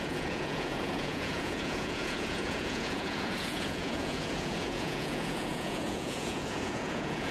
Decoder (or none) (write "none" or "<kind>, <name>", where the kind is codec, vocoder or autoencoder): vocoder, Vocos